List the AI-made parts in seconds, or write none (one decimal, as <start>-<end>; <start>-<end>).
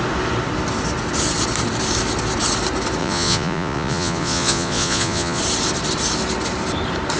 3.0-5.4